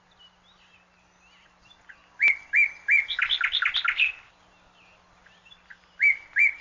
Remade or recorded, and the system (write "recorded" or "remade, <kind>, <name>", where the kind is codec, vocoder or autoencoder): recorded